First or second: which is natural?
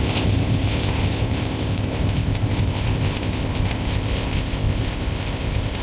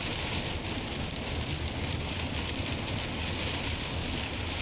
second